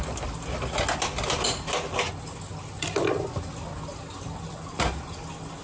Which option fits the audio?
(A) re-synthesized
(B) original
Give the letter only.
B